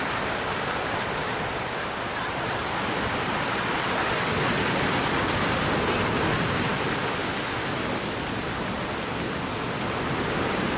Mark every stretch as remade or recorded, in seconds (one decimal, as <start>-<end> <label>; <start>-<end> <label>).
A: 0.0-10.8 recorded